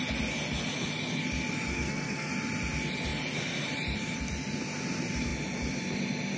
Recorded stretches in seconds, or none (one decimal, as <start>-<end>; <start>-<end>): 0.0-1.7; 2.3-6.4